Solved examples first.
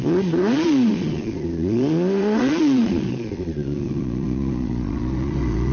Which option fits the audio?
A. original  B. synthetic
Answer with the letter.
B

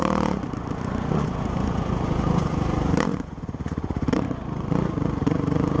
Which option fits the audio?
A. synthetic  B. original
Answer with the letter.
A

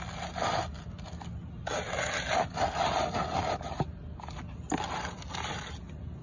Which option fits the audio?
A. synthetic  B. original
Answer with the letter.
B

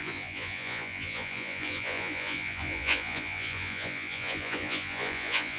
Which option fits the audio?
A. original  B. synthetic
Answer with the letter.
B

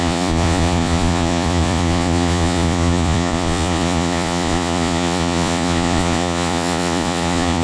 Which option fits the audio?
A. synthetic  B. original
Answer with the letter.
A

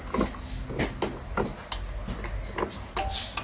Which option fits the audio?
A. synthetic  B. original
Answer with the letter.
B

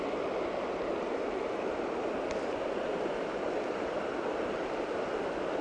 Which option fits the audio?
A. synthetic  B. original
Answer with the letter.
B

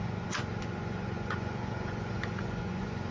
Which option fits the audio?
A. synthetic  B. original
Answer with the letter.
A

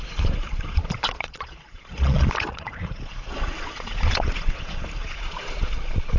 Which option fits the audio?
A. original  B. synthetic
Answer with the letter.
B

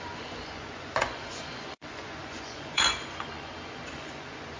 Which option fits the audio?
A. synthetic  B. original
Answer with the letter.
A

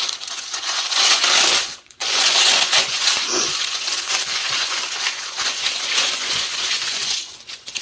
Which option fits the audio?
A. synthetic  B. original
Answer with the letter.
A